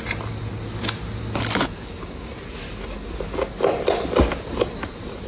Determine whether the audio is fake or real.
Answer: real